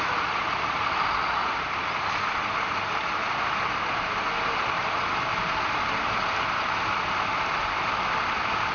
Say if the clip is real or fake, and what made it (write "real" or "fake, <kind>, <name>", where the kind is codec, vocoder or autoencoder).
real